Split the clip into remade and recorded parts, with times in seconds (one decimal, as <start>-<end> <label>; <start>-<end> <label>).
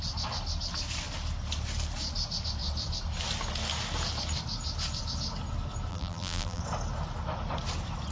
0.0-5.9 recorded; 5.9-6.6 remade; 6.6-8.1 recorded